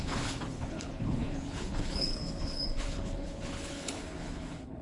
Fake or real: fake